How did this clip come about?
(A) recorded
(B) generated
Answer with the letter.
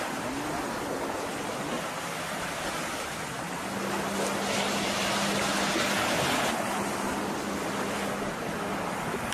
A